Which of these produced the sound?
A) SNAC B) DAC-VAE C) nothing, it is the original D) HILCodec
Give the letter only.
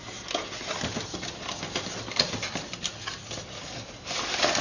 C